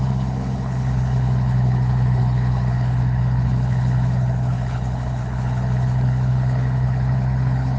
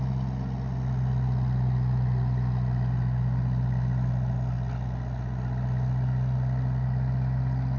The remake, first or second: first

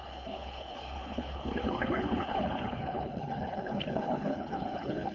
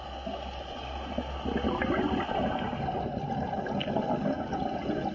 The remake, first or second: first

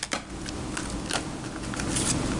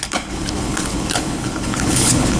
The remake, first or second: second